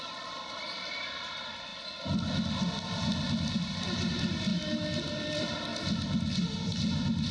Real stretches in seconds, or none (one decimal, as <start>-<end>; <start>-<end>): 1.7-4.1; 4.5-5.0; 5.7-7.3

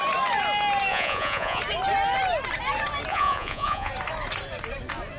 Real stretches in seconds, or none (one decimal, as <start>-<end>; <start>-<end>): 0.0-0.9; 1.6-3.1; 3.9-5.2

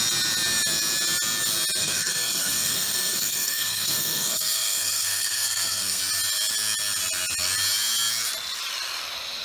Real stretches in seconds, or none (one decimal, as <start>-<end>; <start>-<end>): 0.0-1.8; 6.0-9.4

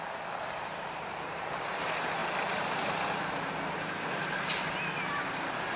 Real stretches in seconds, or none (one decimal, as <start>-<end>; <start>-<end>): 0.0-5.8

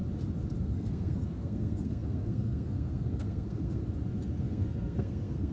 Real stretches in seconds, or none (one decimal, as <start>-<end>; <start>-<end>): 0.0-0.6; 3.8-4.4

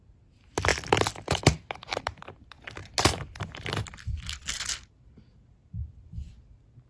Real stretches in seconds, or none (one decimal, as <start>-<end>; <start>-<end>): 0.0-6.9

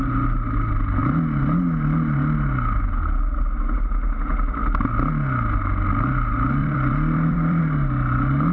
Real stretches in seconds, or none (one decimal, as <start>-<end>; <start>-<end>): 0.0-6.6; 7.6-8.5